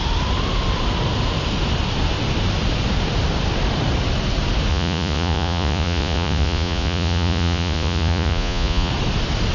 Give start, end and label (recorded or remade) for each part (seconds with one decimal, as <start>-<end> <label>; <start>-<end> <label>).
0.0-4.7 recorded; 4.7-8.9 remade; 8.9-9.5 recorded